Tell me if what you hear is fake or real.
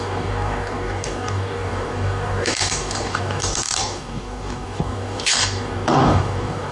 fake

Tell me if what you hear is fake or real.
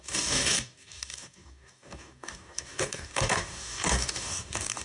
fake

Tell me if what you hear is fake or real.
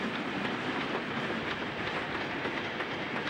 real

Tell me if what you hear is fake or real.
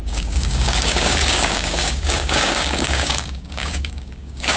fake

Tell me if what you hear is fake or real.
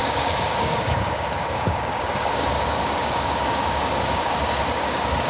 fake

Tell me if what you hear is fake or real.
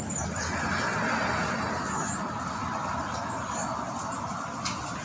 real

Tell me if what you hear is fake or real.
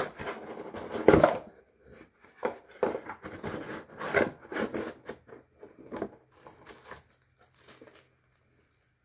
real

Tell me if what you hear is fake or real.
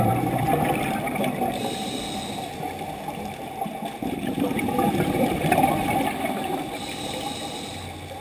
real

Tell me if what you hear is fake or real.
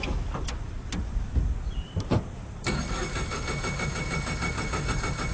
real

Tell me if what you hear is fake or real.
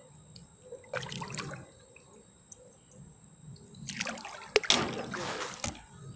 real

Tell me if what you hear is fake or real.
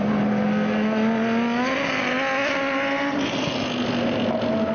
real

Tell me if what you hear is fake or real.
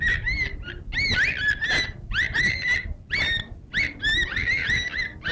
real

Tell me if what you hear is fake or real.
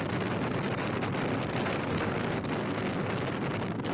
real